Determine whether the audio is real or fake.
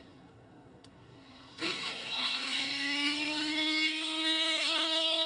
fake